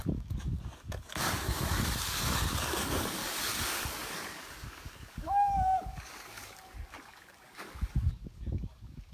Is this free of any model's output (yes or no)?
no